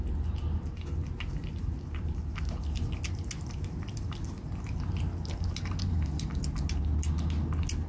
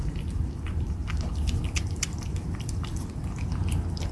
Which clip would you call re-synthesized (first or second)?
second